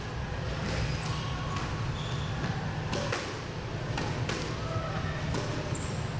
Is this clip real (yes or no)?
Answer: yes